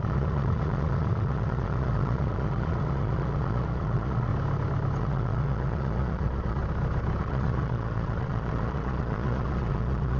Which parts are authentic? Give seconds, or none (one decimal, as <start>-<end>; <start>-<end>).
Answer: 4.3-5.0; 6.6-7.2